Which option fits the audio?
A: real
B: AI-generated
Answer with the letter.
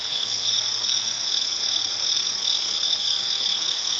B